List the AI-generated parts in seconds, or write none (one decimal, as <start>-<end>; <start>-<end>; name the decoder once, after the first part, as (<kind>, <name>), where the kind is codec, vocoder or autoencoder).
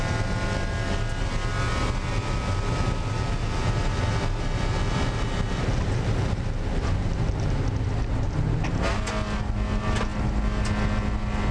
none